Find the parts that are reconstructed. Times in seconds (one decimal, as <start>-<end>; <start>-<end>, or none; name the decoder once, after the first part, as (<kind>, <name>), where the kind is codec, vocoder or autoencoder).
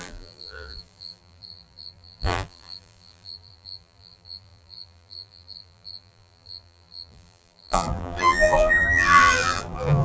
0.0-10.0 (vocoder, BigVGAN v2)